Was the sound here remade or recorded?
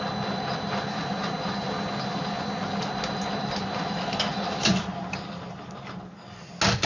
recorded